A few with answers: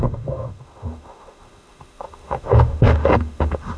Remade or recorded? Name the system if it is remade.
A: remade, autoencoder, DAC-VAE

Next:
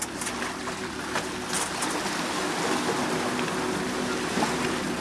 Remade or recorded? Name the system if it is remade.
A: recorded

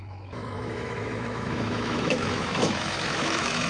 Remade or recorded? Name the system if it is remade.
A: remade, autoencoder, DAC-VAE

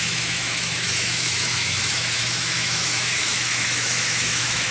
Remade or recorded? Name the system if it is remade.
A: remade, autoencoder, DAC-VAE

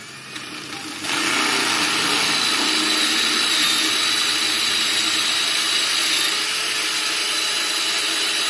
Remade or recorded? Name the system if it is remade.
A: recorded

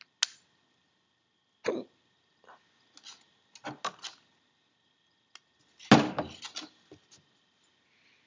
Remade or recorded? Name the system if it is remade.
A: recorded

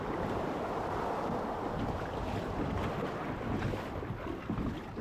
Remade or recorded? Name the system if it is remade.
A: recorded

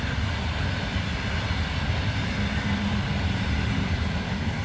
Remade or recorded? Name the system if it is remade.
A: recorded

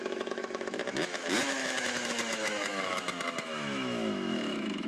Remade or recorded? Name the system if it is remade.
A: remade, autoencoder, DAC-VAE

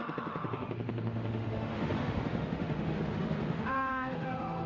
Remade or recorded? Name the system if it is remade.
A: remade, autoencoder, DAC-VAE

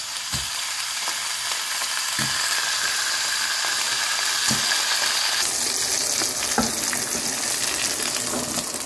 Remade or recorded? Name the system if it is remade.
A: recorded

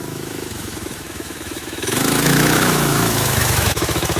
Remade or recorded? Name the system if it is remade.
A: remade, autoencoder, DAC-VAE